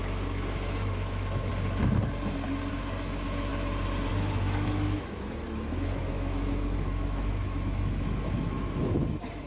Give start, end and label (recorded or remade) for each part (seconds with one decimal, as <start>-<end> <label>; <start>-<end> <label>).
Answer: 0.0-1.5 remade; 1.5-2.7 recorded; 2.7-3.5 remade; 3.5-4.1 recorded; 4.1-9.5 remade